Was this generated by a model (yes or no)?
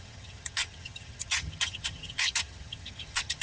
yes